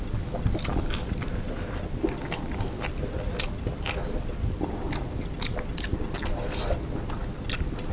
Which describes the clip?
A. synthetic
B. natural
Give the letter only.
B